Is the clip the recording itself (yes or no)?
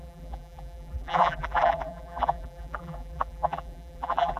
no